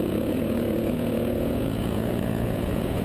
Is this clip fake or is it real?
fake